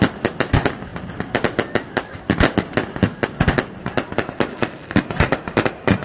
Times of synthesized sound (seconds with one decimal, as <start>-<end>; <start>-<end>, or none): none